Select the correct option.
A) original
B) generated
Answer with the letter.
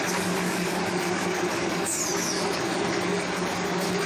B